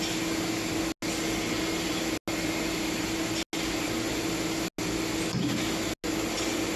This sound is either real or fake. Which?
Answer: real